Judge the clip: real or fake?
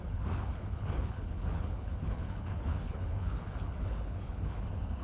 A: fake